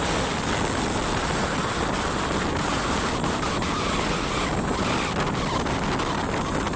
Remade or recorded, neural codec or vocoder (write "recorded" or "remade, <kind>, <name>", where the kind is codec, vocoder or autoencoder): recorded